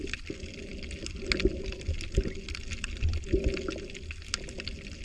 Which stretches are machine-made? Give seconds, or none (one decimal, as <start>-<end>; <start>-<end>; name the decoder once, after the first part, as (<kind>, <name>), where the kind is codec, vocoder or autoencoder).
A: none